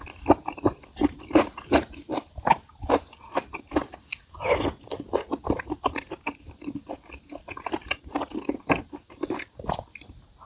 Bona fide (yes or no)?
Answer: yes